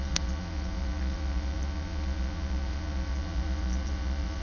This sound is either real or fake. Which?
fake